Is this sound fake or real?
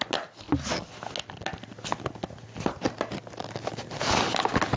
real